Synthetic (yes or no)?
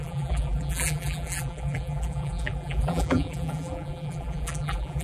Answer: yes